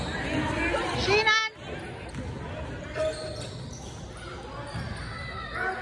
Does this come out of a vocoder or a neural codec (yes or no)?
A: no